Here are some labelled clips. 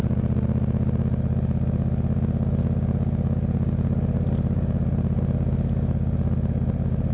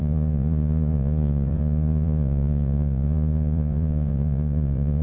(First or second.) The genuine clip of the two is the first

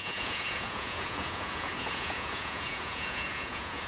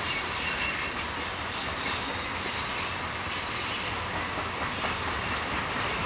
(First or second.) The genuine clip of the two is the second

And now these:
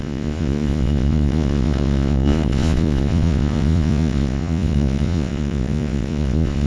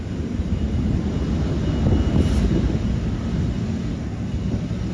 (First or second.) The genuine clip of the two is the second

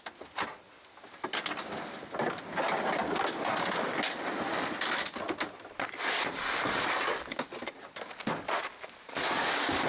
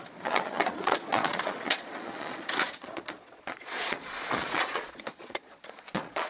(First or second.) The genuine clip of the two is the first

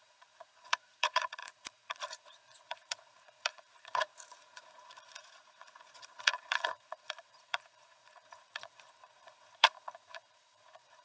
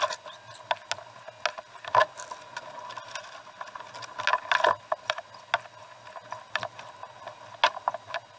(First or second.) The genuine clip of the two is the second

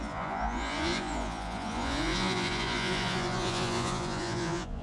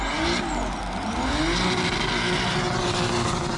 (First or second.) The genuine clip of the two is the second